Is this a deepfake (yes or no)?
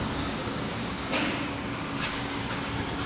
yes